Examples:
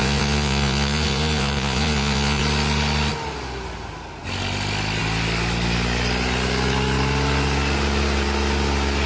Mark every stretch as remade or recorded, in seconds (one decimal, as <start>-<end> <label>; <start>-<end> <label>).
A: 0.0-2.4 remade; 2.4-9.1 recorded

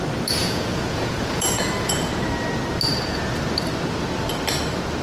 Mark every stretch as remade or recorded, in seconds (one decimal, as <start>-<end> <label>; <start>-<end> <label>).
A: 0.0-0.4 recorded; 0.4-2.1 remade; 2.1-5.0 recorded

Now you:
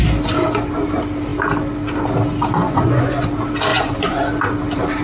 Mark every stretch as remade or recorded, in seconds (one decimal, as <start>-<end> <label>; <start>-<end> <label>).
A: 0.0-2.6 recorded; 2.6-3.2 remade; 3.2-3.7 recorded; 3.7-4.3 remade; 4.3-5.0 recorded

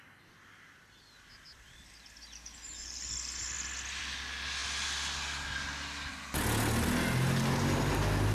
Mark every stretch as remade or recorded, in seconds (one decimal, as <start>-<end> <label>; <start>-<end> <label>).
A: 0.0-8.3 recorded

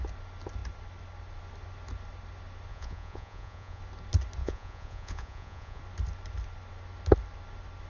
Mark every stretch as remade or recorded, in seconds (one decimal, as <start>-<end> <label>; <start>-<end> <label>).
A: 0.0-2.7 recorded; 2.7-3.8 remade; 3.8-4.4 recorded; 4.4-5.8 remade; 5.8-7.9 recorded

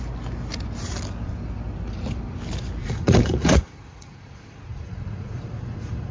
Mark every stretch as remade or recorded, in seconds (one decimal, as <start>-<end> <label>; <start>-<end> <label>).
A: 0.0-2.8 recorded; 2.8-6.1 remade